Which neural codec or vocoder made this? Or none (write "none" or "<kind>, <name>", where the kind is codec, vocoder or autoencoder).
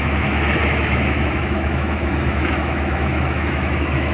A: autoencoder, DAC-VAE